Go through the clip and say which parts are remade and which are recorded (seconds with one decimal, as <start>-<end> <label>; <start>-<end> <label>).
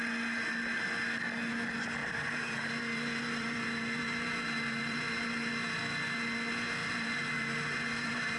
0.0-2.0 recorded; 2.0-5.8 remade; 5.8-6.8 recorded; 6.8-8.4 remade